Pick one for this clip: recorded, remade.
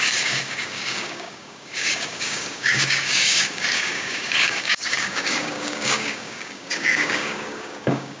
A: remade